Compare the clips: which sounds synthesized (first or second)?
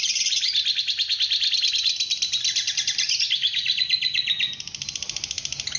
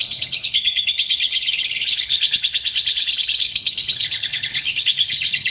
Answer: second